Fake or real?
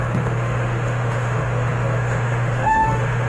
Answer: fake